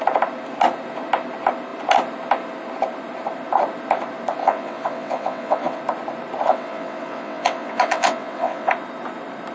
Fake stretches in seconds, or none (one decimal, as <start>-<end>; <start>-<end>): 4.4-5.8; 6.5-8.7